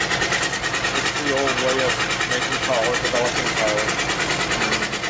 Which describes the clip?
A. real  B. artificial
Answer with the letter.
A